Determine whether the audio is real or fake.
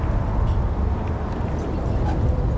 real